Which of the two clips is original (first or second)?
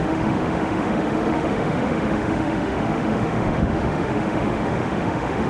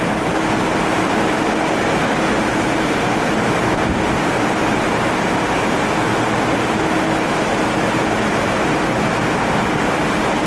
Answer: second